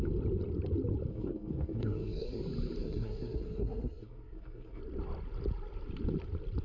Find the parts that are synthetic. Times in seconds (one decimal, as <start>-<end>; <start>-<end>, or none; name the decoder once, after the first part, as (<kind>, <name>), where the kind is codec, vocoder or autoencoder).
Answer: 1.1-2.4 (codec, SNAC); 2.8-4.8